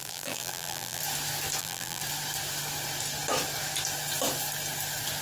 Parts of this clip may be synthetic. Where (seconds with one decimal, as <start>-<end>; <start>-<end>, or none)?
0.0-1.0; 1.6-2.0